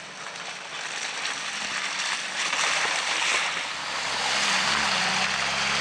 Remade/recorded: recorded